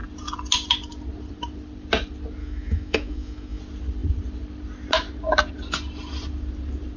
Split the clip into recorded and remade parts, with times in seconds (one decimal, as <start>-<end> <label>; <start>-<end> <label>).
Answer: 0.0-2.4 recorded; 2.4-3.6 remade; 3.6-7.0 recorded